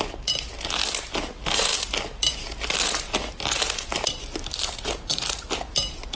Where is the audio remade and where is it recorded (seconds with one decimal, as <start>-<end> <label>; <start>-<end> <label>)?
0.0-6.1 recorded